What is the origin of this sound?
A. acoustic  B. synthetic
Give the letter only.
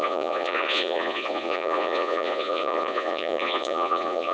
B